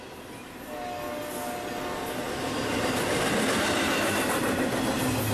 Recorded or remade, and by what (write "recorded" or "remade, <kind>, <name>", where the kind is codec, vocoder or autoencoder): recorded